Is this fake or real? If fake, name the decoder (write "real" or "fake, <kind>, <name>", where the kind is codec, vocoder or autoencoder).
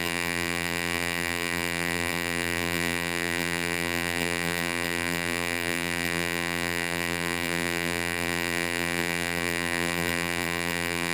fake, vocoder, BigVGAN v2